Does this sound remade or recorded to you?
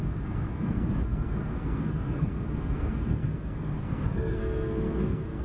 remade